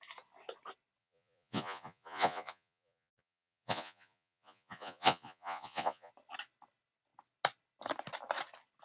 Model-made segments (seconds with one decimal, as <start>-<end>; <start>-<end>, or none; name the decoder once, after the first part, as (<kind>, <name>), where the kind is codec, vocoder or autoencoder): 1.0-6.1 (vocoder, Vocos)